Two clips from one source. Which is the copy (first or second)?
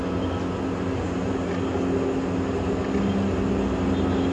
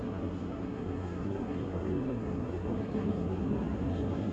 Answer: second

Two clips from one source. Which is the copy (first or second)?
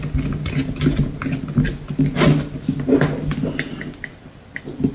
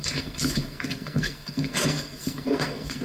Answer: second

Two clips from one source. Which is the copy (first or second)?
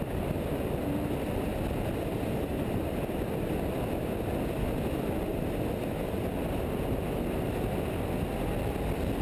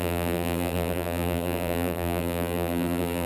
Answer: second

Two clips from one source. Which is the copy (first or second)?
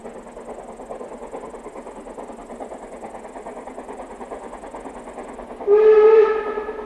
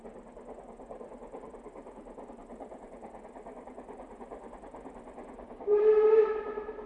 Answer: second